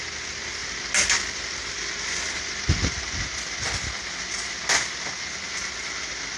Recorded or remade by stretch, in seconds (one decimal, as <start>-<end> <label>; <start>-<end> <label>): 0.0-6.4 recorded